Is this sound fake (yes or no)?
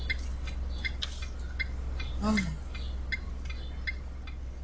no